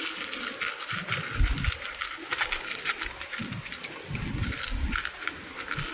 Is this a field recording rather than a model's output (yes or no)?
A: yes